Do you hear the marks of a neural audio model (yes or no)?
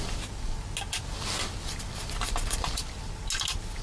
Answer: no